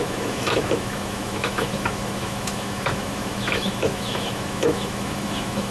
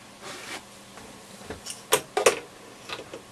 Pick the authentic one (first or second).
second